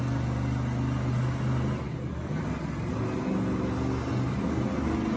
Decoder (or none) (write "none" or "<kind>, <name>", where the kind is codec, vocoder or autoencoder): none